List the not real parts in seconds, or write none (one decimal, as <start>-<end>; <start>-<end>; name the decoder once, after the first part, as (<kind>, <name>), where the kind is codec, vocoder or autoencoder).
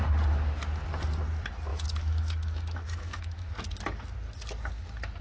1.7-3.5 (autoencoder, DAC-VAE)